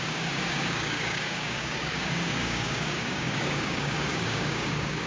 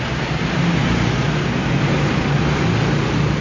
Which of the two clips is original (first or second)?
second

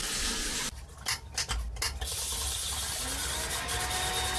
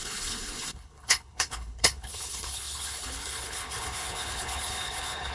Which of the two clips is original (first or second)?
first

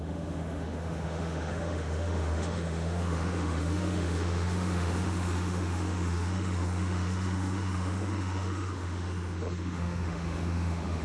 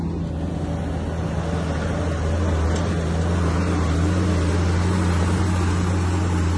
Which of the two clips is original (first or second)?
second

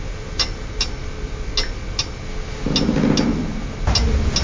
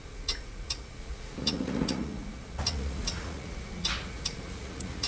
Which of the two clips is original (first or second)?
first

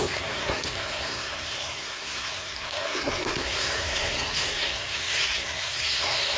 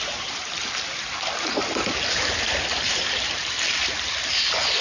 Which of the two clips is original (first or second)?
second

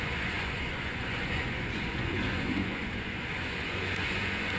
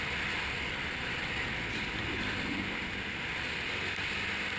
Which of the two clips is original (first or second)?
second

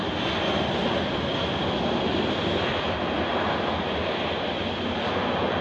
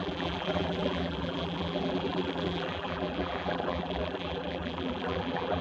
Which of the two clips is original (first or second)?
first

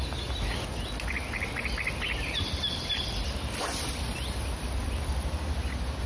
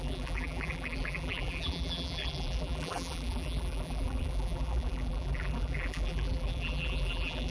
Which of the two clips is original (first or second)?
first